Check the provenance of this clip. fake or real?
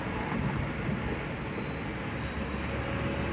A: real